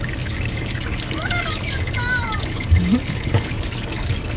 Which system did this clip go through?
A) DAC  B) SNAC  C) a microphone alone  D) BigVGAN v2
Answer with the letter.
A